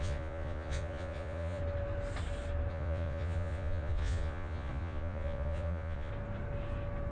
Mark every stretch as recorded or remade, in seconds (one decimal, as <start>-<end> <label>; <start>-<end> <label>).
0.0-1.6 remade; 1.6-2.7 recorded; 2.7-6.1 remade; 6.1-7.1 recorded